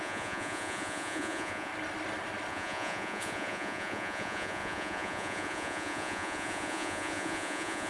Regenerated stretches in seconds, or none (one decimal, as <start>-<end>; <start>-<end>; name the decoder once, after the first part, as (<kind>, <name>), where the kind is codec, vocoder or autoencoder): 0.0-1.7 (vocoder, Vocos); 2.5-7.9